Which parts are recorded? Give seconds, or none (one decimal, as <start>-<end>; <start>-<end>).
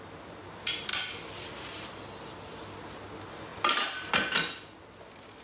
0.0-5.4